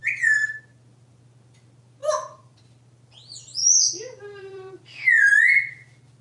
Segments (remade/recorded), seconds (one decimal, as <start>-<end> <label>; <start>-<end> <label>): 0.0-2.0 recorded; 2.0-2.6 remade; 2.6-3.6 recorded; 3.6-4.8 remade; 4.8-6.2 recorded